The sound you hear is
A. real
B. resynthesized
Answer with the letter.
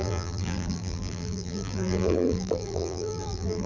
B